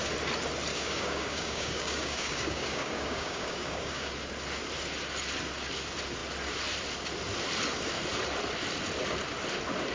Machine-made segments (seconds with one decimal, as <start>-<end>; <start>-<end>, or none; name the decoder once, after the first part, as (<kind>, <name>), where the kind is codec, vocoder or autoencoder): 0.7-4.1 (codec, DAC)